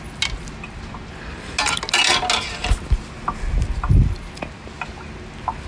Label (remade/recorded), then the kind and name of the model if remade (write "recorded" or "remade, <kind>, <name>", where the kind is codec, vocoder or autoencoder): recorded